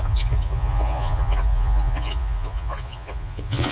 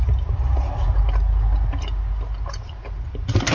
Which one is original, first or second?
second